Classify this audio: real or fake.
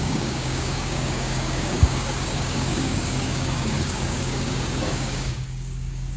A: fake